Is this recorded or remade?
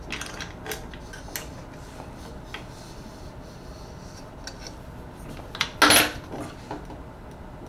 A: recorded